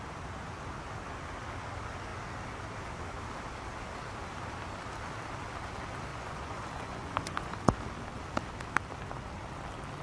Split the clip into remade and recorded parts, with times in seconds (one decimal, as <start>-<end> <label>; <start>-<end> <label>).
0.0-6.1 recorded; 6.1-7.5 remade; 7.5-10.0 recorded